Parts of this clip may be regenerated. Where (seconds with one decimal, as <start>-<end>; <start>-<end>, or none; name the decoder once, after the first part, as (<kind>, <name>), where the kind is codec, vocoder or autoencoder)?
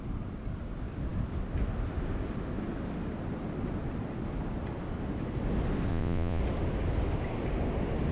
5.9-6.4 (vocoder, Vocos)